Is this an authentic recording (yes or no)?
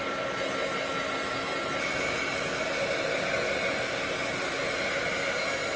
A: yes